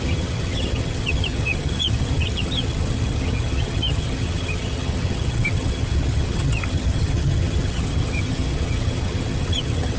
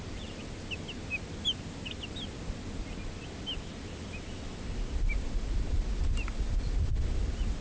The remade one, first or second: first